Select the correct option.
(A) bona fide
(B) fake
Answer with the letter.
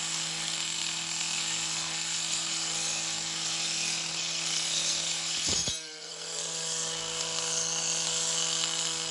B